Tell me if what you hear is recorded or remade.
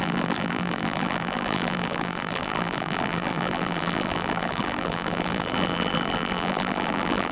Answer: remade